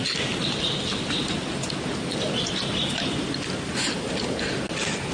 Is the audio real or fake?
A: real